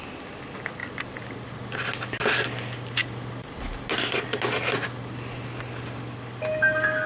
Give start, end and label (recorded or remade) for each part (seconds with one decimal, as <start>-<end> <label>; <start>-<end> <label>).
0.0-7.1 recorded